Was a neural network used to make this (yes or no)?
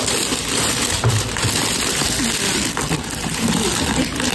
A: no